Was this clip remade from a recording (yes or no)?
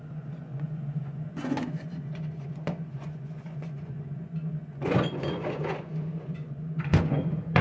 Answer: yes